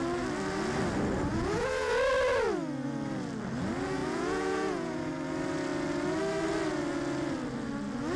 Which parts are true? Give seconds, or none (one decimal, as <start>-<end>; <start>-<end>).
0.0-1.3; 1.9-4.0; 5.1-8.2